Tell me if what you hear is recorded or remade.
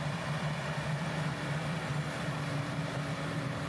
remade